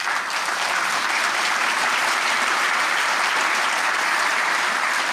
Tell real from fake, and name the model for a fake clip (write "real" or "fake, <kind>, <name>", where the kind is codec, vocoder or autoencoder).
fake, vocoder, BigVGAN v2